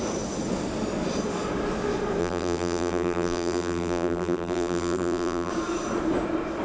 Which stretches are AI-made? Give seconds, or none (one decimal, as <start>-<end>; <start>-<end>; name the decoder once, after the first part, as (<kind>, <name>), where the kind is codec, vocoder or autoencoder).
2.2-5.5 (vocoder, BigVGAN v2)